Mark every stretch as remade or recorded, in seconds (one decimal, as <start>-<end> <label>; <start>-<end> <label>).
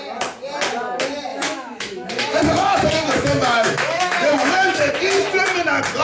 0.0-1.3 recorded; 1.3-4.9 remade; 4.9-6.0 recorded